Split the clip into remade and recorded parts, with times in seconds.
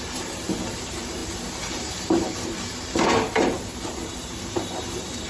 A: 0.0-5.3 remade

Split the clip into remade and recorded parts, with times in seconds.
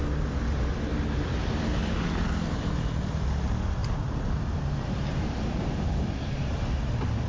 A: 0.0-3.8 recorded; 3.8-6.6 remade; 6.6-7.3 recorded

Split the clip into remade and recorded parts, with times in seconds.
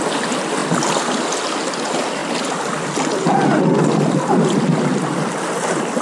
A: 0.0-6.0 recorded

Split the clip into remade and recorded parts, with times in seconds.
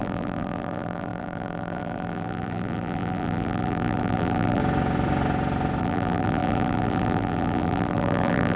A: 0.0-4.6 remade; 4.6-5.8 recorded; 5.8-8.6 remade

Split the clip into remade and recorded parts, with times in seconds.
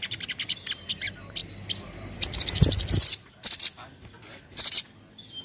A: 0.0-1.4 recorded; 1.4-3.3 remade; 3.3-5.4 recorded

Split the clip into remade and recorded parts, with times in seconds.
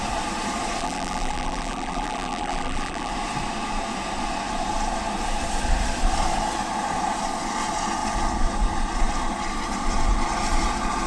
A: 0.0-0.8 recorded; 0.8-3.1 remade; 3.1-11.1 recorded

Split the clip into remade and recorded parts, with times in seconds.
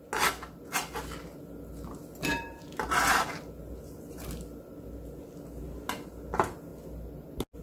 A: 0.0-2.3 recorded; 2.3-3.3 remade; 3.3-7.6 recorded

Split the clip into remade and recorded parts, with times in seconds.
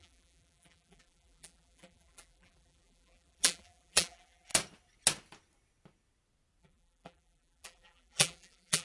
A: 0.0-4.5 remade; 4.5-6.6 recorded; 6.6-8.8 remade